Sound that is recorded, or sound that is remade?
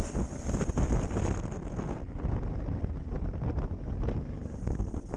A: recorded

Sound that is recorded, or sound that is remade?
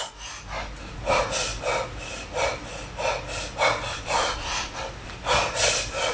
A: recorded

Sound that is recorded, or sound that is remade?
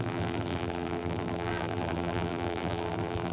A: remade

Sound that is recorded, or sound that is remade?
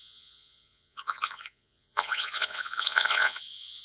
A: remade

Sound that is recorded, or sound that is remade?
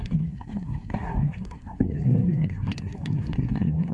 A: remade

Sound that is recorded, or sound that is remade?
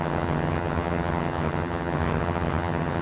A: remade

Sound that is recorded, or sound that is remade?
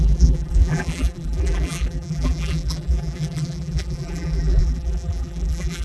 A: remade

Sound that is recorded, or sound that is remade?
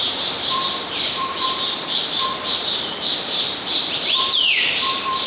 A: remade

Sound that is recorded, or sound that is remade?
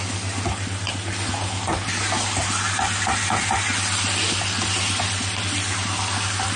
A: recorded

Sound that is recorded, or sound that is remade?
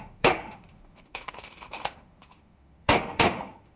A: remade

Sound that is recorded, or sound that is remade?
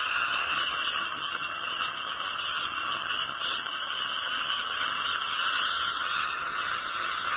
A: remade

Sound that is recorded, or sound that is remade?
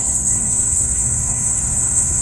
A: remade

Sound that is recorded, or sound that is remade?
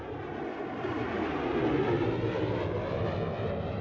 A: recorded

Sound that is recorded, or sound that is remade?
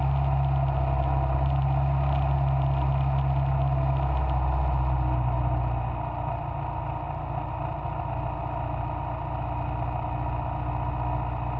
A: recorded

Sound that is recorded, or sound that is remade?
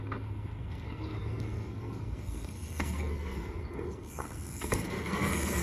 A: remade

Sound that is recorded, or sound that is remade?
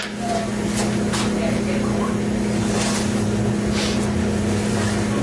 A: recorded